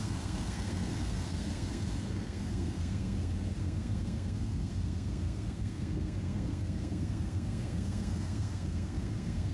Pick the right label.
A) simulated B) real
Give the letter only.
A